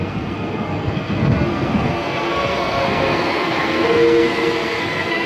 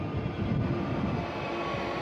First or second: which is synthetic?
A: first